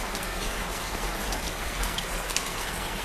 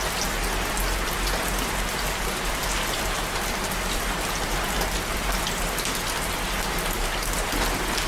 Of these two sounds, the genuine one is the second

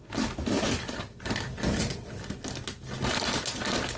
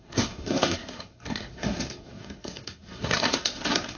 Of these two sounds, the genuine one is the first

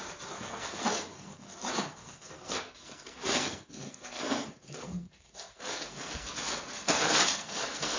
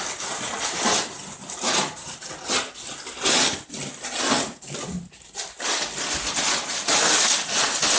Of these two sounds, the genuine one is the second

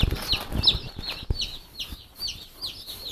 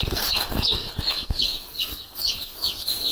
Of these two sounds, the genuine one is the first